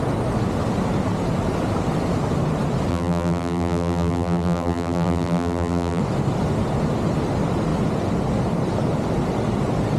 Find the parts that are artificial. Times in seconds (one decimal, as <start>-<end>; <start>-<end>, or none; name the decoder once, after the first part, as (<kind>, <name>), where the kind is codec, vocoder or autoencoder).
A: 2.9-6.0 (vocoder, BigVGAN v2)